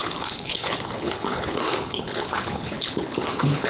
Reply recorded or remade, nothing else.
remade